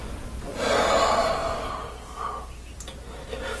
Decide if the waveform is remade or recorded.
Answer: recorded